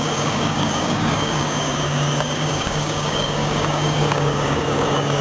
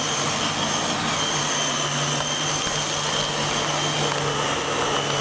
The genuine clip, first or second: second